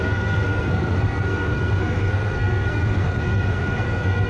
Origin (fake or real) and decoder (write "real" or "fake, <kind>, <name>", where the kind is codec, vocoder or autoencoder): fake, codec, SNAC